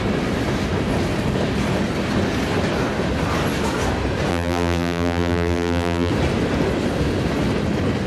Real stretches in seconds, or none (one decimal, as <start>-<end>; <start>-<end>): 0.0-4.3; 6.1-8.1